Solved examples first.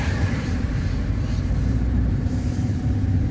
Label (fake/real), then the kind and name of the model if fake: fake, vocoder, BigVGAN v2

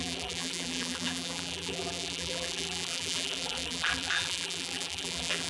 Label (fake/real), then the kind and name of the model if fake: fake, vocoder, BigVGAN v2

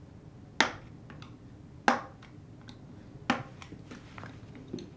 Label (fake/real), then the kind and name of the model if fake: real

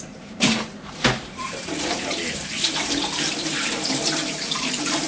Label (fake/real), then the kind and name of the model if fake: fake, vocoder, BigVGAN v2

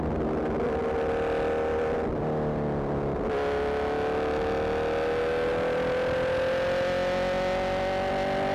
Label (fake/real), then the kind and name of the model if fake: real